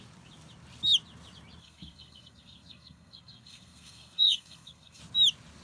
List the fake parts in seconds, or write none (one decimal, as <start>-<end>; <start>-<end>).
1.6-5.0